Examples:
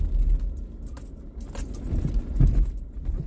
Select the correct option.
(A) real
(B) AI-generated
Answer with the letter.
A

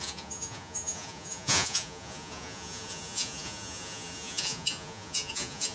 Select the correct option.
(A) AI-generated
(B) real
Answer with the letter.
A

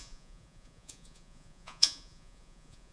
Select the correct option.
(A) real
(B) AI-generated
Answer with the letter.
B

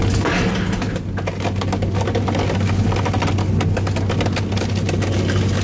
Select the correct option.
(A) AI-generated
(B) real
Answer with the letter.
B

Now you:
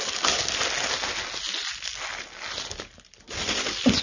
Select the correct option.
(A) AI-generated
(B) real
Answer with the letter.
B